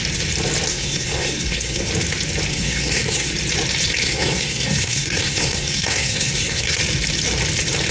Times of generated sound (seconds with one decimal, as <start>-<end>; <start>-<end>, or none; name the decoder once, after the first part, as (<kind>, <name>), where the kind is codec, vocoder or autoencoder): 0.7-1.9 (codec, SNAC); 2.5-3.3; 4.0-6.8